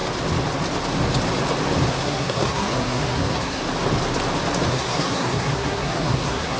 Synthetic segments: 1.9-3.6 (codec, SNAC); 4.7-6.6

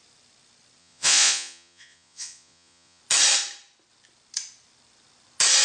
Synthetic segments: 0.8-3.0 (vocoder, Vocos)

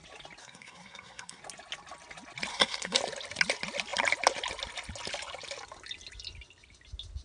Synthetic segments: 0.4-1.4 (codec, SNAC); 2.5-3.0

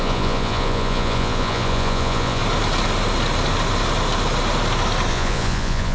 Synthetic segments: 0.0-2.4 (vocoder, Vocos); 5.1-5.9

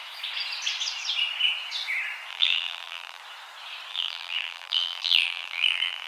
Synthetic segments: 2.3-3.2 (vocoder, BigVGAN v2); 3.9-6.1

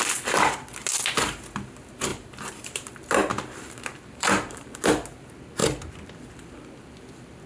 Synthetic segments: 2.1-4.8 (vocoder, BigVGAN v2)